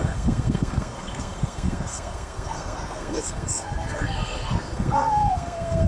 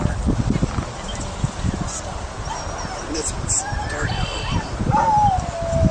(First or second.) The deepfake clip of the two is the first